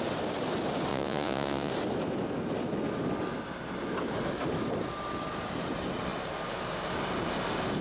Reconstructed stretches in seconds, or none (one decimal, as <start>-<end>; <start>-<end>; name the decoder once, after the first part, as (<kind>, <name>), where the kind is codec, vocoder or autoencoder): 0.9-1.7 (vocoder, Vocos)